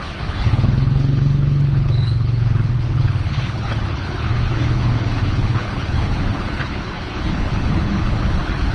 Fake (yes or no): yes